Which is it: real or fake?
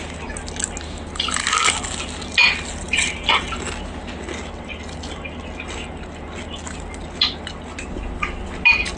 real